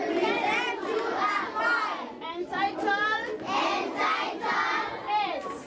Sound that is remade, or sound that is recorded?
recorded